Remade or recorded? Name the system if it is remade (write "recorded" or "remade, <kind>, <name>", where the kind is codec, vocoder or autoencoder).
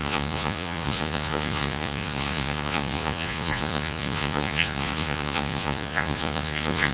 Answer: remade, vocoder, Vocos